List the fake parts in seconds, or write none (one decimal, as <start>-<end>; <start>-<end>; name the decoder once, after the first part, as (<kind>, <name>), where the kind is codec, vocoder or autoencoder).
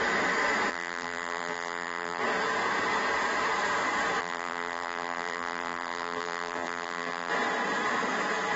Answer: 0.7-2.2 (vocoder, BigVGAN v2); 4.2-7.3